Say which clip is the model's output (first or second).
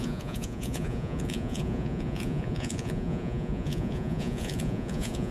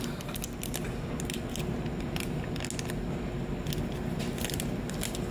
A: first